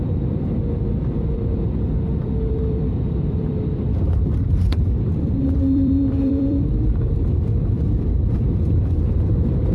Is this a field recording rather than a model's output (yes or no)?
no